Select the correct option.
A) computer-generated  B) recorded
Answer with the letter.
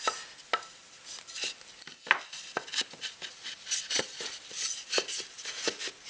B